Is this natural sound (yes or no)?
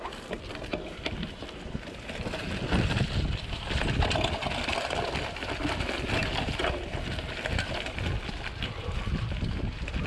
yes